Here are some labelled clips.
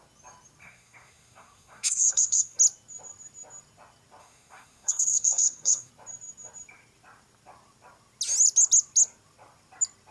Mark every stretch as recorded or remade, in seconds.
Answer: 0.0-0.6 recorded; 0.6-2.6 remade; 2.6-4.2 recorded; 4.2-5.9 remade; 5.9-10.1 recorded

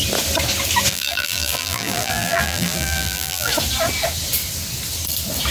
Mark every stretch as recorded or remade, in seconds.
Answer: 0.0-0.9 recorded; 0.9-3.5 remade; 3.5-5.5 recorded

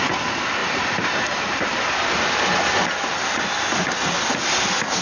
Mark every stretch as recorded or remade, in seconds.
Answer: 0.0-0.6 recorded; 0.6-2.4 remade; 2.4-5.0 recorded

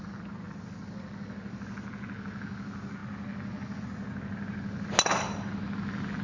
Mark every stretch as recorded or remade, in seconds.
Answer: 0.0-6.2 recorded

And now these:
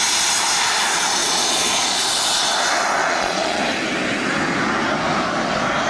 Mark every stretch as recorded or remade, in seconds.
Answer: 0.0-1.2 recorded; 1.2-2.0 remade; 2.0-3.0 recorded; 3.0-3.6 remade; 3.6-5.9 recorded